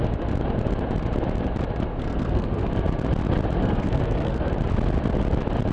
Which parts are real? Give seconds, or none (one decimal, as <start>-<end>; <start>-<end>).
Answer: 0.0-1.9; 2.7-3.6; 4.5-5.7